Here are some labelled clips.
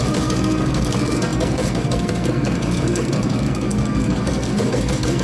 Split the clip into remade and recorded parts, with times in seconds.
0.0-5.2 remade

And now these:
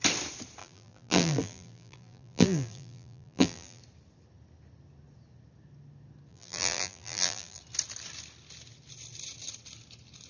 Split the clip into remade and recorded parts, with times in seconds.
0.0-0.6 recorded; 0.6-3.8 remade; 3.8-6.3 recorded; 6.3-7.6 remade; 7.6-10.3 recorded

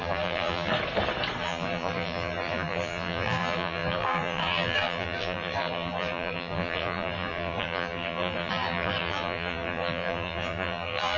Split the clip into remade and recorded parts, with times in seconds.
0.0-0.7 remade; 0.7-1.4 recorded; 1.4-11.2 remade

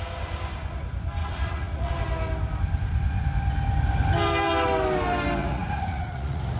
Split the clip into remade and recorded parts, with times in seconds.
0.0-1.2 recorded; 1.2-1.9 remade; 1.9-5.4 recorded; 5.4-6.6 remade

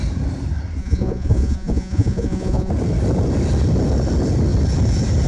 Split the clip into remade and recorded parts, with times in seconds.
0.0-0.8 recorded; 0.8-2.7 remade; 2.7-5.3 recorded

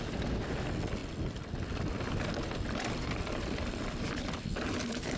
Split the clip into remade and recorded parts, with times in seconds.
0.0-5.2 recorded

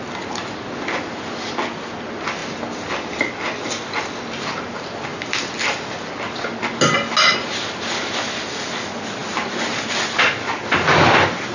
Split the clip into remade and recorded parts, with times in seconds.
0.0-11.5 recorded